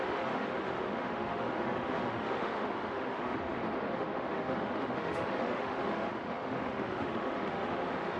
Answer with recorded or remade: remade